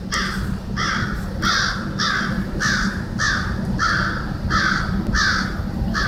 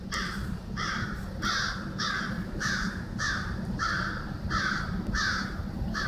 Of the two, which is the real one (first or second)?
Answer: first